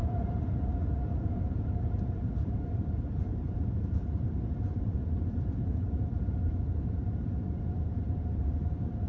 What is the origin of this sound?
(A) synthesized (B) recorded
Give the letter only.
A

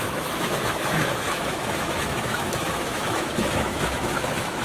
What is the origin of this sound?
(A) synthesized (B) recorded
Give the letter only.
A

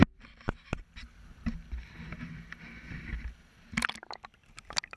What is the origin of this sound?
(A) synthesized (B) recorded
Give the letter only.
B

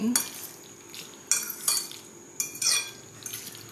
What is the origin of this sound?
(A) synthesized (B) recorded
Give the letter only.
B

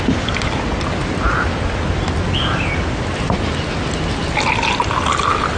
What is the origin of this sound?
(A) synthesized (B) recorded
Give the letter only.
B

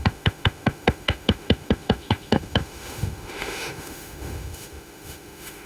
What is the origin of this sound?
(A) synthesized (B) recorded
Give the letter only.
A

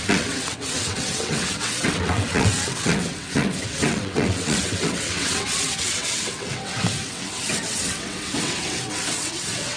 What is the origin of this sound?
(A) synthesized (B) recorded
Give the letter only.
A